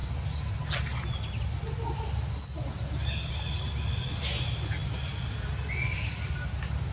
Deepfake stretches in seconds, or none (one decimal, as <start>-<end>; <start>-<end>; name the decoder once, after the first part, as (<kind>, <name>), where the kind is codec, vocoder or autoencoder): none